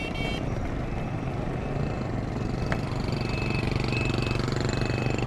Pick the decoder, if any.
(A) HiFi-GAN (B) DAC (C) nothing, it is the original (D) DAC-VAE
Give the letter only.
C